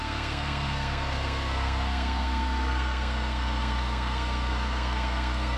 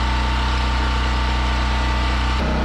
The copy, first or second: first